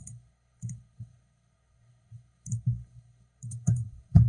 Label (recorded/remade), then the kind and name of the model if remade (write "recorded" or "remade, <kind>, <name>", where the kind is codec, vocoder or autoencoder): remade, codec, SNAC